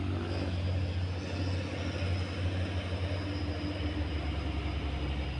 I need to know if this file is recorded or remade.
recorded